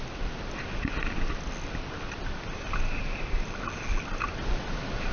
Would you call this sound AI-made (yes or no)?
no